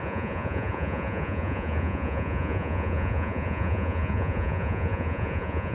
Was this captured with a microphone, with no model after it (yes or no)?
no